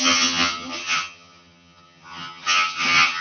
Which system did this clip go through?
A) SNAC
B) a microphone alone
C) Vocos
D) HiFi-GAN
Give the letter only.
D